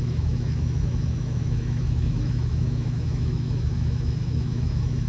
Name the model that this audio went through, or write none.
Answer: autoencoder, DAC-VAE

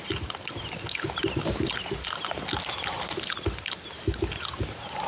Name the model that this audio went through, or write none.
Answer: none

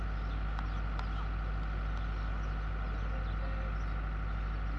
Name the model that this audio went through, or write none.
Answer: none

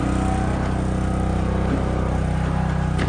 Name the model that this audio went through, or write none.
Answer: none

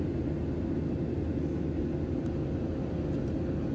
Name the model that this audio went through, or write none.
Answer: none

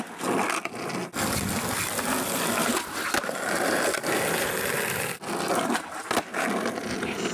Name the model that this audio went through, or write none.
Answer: none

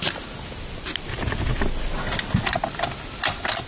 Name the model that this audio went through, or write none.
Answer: none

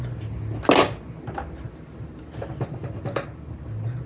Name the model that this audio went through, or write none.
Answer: none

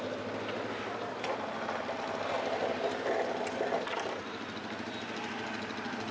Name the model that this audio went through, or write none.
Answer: none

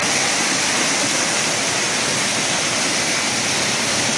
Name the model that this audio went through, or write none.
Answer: none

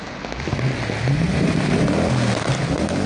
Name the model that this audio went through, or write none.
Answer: none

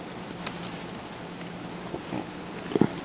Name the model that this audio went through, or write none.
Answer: none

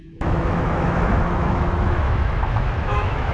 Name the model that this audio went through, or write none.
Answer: autoencoder, DAC-VAE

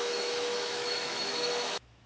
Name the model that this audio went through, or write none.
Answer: autoencoder, DAC-VAE